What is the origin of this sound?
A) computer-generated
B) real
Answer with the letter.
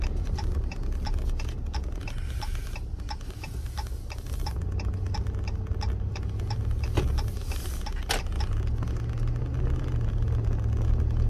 B